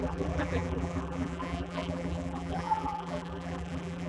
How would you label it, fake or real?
fake